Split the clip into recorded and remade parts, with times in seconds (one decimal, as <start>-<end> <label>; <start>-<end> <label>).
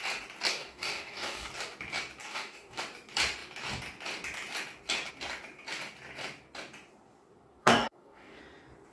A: 0.0-0.5 recorded; 0.5-1.5 remade; 1.5-2.2 recorded; 2.2-2.8 remade; 2.8-7.6 recorded; 7.6-8.4 remade; 8.4-8.9 recorded